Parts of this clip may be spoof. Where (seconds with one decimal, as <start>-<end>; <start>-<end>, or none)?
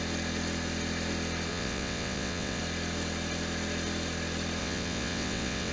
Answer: 1.5-2.6; 4.6-5.7